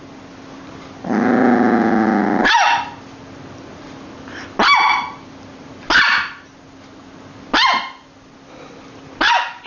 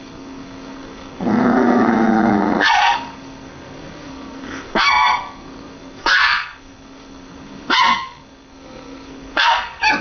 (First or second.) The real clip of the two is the first